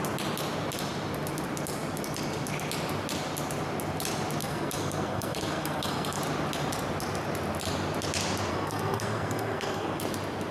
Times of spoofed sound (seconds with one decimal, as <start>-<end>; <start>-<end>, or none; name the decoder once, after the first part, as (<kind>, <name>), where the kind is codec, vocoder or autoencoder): 4.4-6.2 (codec, SNAC); 8.5-10.0